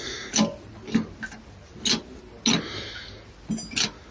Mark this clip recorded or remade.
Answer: recorded